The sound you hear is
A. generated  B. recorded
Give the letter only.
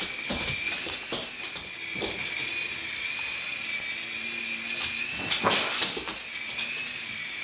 B